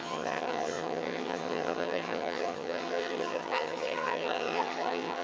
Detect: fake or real fake